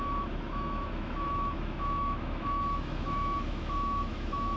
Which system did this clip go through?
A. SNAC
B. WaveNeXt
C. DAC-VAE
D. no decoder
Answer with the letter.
C